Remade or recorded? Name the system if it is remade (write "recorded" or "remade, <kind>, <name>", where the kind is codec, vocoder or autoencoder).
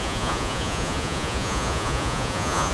remade, vocoder, Vocos